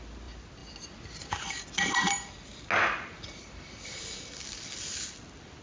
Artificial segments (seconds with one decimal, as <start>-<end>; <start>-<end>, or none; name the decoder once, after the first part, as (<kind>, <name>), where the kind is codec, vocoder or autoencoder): none